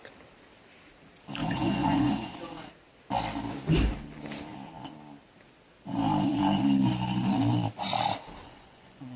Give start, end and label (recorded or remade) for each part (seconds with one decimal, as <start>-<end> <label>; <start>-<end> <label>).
0.0-1.4 recorded; 1.4-2.5 remade; 2.5-8.4 recorded; 8.4-9.2 remade